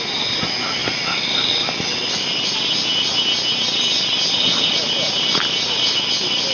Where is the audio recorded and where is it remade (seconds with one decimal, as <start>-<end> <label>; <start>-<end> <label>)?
0.0-6.5 recorded